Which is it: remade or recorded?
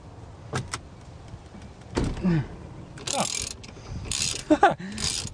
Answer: recorded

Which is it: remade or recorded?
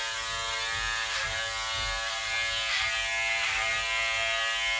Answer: recorded